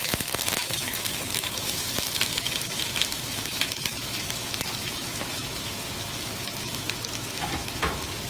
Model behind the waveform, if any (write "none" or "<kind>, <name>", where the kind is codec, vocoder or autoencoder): autoencoder, DAC-VAE